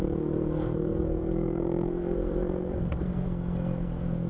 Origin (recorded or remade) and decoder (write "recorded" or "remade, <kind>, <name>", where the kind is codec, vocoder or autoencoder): remade, codec, SNAC